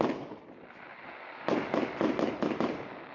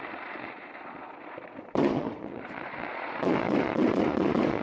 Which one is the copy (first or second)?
second